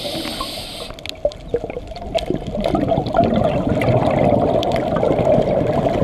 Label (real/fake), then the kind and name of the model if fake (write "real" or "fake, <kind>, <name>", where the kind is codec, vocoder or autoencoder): real